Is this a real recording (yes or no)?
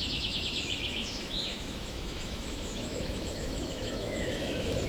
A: no